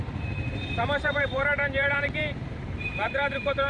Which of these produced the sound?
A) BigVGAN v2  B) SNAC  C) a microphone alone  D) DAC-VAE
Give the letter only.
A